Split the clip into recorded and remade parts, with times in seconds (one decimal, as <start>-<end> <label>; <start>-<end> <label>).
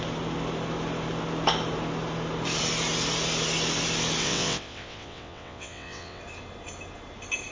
0.0-4.2 recorded; 4.2-6.2 remade; 6.2-7.5 recorded